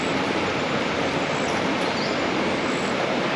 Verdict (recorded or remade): recorded